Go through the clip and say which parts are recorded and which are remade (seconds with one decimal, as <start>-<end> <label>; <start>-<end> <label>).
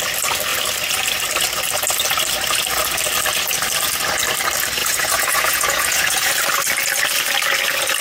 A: 0.0-4.8 recorded; 4.8-6.3 remade; 6.3-8.0 recorded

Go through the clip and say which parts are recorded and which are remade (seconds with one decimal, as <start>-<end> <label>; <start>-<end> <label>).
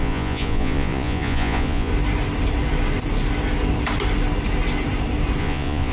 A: 0.0-1.9 remade; 1.9-5.4 recorded; 5.4-5.9 remade